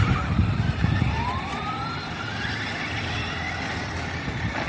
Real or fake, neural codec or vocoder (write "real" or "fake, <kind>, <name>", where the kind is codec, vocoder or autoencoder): real